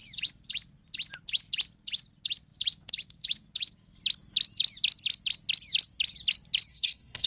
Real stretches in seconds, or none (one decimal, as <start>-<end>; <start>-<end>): 0.0-6.7